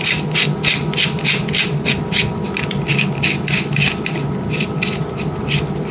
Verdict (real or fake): real